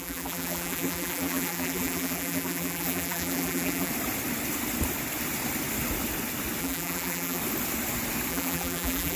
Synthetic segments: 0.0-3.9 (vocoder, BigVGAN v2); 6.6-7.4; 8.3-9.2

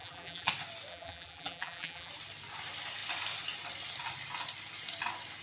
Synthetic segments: 0.0-0.5 (vocoder, BigVGAN v2); 0.9-2.1

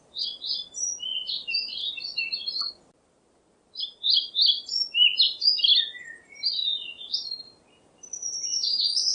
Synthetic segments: none

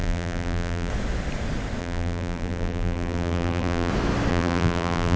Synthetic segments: 0.0-0.9 (vocoder, BigVGAN v2); 1.8-3.9; 4.3-5.2

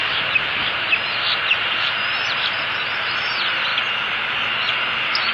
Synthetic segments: 0.0-3.2 (vocoder, BigVGAN v2)

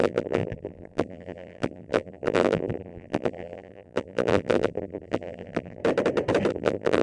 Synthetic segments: 0.0-5.8 (vocoder, BigVGAN v2); 6.5-7.0